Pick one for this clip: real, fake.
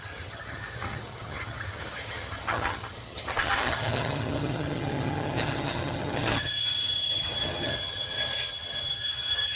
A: fake